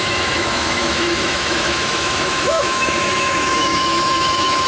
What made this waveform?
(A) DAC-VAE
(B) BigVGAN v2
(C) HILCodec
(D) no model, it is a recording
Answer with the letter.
A